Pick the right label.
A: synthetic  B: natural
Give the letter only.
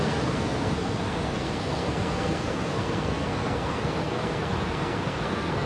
A